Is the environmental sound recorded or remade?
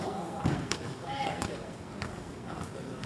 remade